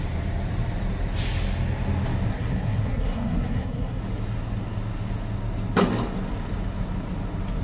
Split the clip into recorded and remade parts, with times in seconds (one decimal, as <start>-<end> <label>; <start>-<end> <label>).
0.0-2.3 recorded; 2.3-4.0 remade; 4.0-7.6 recorded